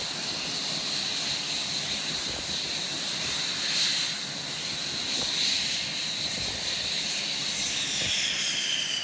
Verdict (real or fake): real